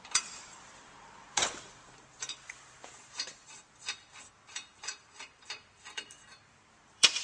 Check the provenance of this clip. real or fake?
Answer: fake